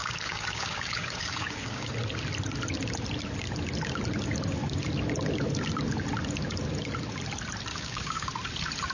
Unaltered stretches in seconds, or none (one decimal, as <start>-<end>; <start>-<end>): 1.9-7.7; 8.3-8.9